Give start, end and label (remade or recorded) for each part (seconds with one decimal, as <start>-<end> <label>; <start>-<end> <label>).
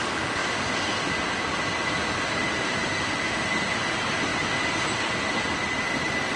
0.0-6.4 recorded